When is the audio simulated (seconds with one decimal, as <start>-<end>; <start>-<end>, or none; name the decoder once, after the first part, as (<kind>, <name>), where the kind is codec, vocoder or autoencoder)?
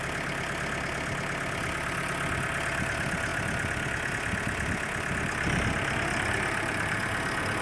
none